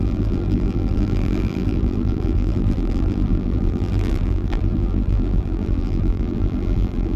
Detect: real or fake fake